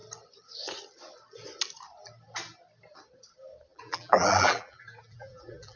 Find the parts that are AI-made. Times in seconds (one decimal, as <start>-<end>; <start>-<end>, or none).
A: 3.7-5.8